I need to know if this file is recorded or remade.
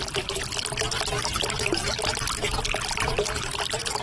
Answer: recorded